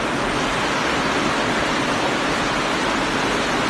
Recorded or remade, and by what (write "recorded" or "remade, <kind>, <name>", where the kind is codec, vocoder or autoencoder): recorded